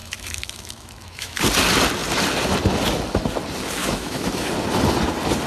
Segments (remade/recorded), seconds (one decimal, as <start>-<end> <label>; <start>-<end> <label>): 0.0-1.4 remade; 1.4-3.8 recorded; 3.8-4.3 remade; 4.3-5.5 recorded